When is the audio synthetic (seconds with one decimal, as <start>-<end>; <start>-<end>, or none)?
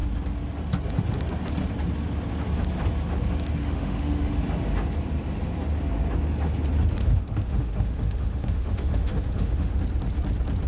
3.6-4.3; 7.0-9.8